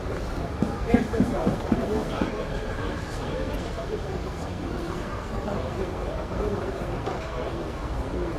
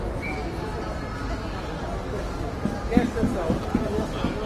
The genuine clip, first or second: second